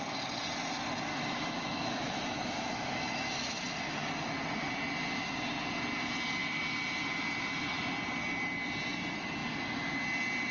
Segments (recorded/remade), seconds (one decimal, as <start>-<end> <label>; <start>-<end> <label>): 0.0-1.1 recorded; 1.1-3.6 remade; 3.6-10.5 recorded

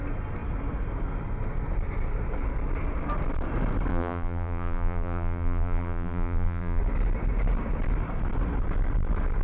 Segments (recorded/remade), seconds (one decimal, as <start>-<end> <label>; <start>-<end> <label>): 0.0-3.9 recorded; 3.9-6.8 remade; 6.8-9.4 recorded

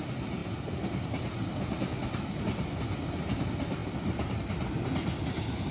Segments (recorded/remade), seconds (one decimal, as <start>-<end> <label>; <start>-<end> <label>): 0.0-3.8 recorded; 3.8-4.7 remade; 4.7-5.7 recorded

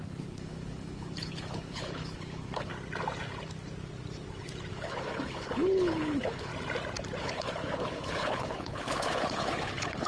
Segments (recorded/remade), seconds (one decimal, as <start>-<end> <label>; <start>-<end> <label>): 0.0-2.7 remade; 2.7-4.7 recorded; 4.7-6.5 remade; 6.5-7.2 recorded; 7.2-10.1 remade